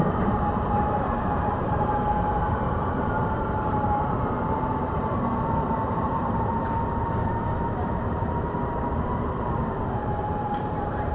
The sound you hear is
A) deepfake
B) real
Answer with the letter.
A